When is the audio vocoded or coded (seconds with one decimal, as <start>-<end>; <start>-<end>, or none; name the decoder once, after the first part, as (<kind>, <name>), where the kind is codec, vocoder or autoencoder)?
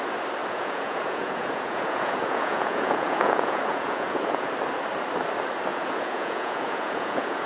0.4-4.5 (vocoder, Vocos); 5.7-7.5